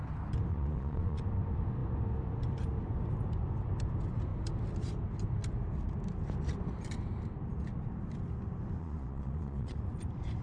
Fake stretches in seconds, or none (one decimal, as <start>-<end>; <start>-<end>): 0.5-1.2; 8.8-9.8